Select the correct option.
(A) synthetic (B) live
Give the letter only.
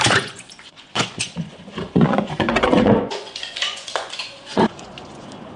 A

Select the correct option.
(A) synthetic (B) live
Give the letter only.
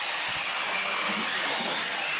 B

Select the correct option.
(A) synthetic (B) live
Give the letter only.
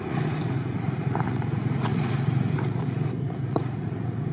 A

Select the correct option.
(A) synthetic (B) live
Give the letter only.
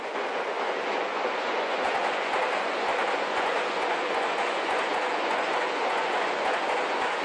A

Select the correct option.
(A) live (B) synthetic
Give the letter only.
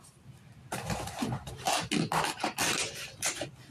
A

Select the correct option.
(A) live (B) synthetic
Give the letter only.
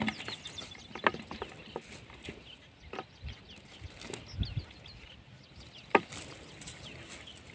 A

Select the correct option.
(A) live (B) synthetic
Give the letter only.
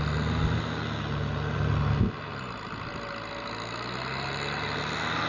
A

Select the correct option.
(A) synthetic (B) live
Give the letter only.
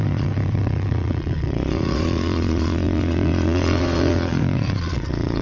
A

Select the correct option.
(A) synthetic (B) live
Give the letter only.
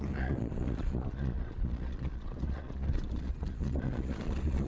A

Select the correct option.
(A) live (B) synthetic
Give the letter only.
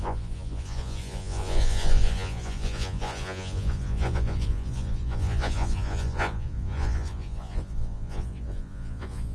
B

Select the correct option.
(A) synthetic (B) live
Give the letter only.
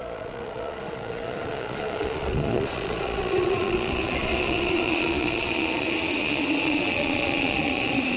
A